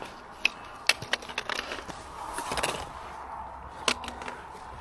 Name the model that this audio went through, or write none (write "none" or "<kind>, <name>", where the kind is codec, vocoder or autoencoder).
none